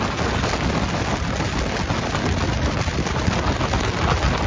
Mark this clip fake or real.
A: real